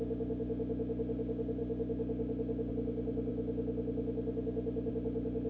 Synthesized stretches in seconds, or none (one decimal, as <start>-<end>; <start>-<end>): none